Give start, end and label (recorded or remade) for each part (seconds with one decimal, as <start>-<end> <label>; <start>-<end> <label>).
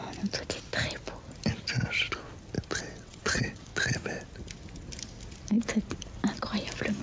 0.0-2.8 recorded; 2.8-3.7 remade; 3.7-7.0 recorded